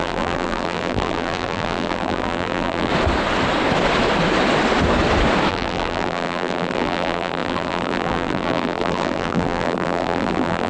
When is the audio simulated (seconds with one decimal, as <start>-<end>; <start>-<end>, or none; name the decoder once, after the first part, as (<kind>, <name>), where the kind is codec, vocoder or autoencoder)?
0.0-2.9 (vocoder, BigVGAN v2); 5.5-10.7